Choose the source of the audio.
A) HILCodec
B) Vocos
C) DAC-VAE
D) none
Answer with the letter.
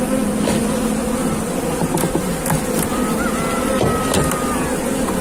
D